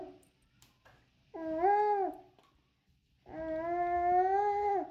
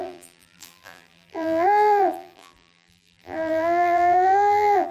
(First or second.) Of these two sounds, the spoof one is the second